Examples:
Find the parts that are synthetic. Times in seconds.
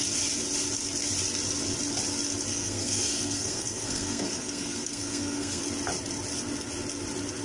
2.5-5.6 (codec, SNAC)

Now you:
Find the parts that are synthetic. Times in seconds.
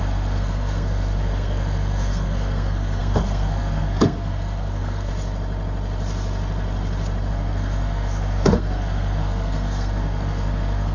0.0-5.1 (codec, SNAC); 7.3-10.9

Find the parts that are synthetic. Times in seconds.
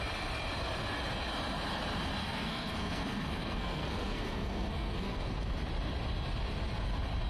2.2-5.5 (codec, SNAC)